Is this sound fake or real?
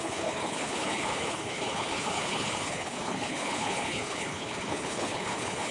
fake